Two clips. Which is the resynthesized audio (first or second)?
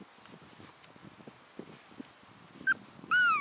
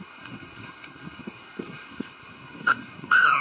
second